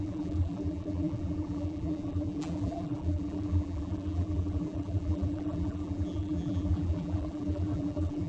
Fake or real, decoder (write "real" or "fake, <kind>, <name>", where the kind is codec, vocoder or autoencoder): fake, vocoder, BigVGAN v2